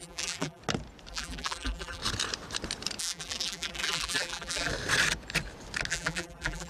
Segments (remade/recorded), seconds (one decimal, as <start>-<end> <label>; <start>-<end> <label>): 0.0-0.6 remade; 0.6-1.1 recorded; 1.1-2.0 remade; 2.0-3.0 recorded; 3.0-4.7 remade; 4.7-5.9 recorded; 5.9-6.7 remade